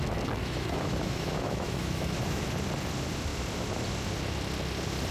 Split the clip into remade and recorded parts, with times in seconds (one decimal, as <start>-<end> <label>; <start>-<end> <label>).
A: 0.0-0.4 recorded; 0.4-2.4 remade; 2.4-5.1 recorded